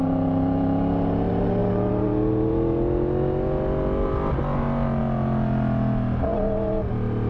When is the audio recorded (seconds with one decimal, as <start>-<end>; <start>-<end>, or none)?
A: 0.0-7.3